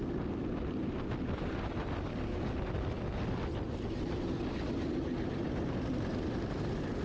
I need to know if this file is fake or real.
real